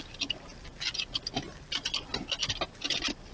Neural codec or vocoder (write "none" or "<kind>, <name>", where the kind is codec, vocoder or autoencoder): none